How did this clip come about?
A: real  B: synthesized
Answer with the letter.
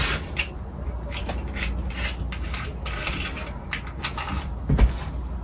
A